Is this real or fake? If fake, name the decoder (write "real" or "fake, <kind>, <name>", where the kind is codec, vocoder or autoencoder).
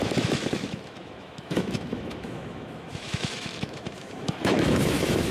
fake, autoencoder, DAC-VAE